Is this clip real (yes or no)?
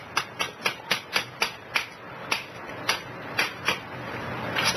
yes